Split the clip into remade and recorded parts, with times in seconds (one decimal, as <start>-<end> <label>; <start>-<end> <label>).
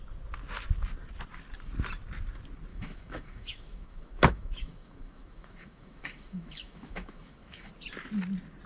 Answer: 0.0-2.7 recorded; 2.7-7.7 remade; 7.7-8.7 recorded